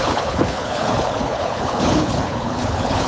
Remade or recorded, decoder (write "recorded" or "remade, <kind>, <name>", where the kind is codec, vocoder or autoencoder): remade, codec, HILCodec